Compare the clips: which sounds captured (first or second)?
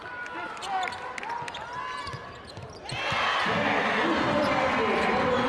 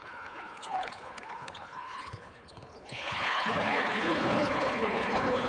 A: first